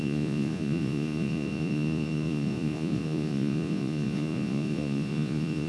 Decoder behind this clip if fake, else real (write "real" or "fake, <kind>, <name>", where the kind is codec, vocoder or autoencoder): fake, vocoder, Vocos